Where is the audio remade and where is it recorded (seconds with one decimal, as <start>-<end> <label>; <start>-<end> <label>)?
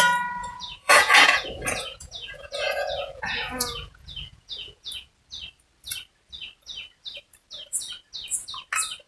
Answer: 0.0-0.4 recorded; 0.4-5.1 remade; 5.1-9.1 recorded